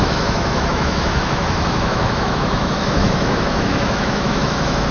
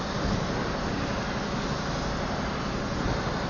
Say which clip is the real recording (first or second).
second